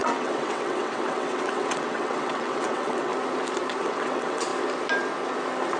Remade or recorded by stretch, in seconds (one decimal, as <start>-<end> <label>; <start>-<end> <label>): 0.0-3.1 remade; 3.1-3.8 recorded; 3.8-4.5 remade; 4.5-5.8 recorded

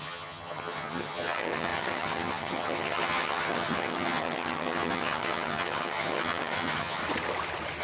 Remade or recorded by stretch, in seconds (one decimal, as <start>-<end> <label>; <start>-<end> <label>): 0.0-7.0 remade; 7.0-7.8 recorded

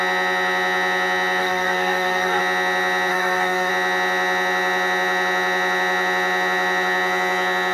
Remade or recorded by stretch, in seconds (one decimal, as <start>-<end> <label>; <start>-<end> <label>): 0.0-1.4 recorded; 1.4-2.4 remade; 2.4-3.1 recorded; 3.1-3.7 remade; 3.7-7.7 recorded

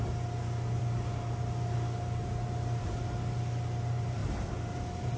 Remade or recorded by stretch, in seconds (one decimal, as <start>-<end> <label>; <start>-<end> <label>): 0.0-5.2 recorded

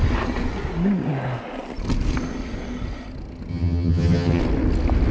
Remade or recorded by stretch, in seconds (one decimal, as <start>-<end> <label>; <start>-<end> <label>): 0.0-3.5 recorded; 3.5-4.4 remade; 4.4-5.1 recorded

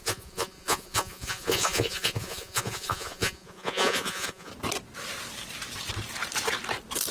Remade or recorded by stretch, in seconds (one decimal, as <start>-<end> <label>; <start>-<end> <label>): 0.0-4.5 remade; 4.5-7.1 recorded